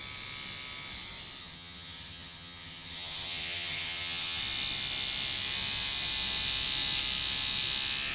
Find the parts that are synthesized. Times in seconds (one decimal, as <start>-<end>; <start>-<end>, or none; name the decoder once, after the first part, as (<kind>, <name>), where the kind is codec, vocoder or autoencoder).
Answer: 1.4-4.4 (vocoder, HiFi-GAN)